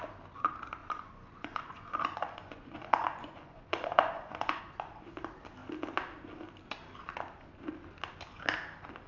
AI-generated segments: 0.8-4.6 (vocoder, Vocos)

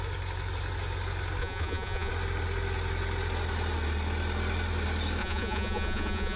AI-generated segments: 1.4-2.1 (vocoder, Vocos); 5.2-6.4

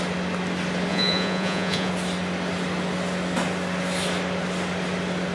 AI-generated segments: 0.9-1.9 (vocoder, Vocos)

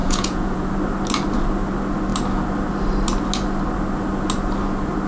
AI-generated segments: 0.0-0.7 (vocoder, Vocos)

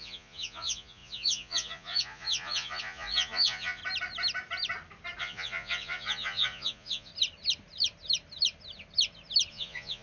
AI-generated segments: 0.0-3.8 (vocoder, Vocos); 5.2-7.1; 9.5-10.0